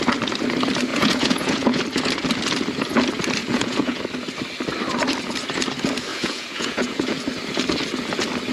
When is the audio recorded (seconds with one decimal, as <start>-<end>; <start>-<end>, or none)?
0.0-0.9; 1.8-3.4; 4.0-6.1; 7.2-8.5